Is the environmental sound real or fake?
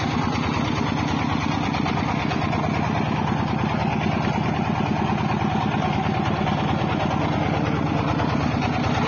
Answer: real